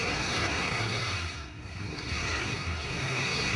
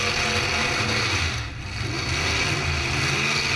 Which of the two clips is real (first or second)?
second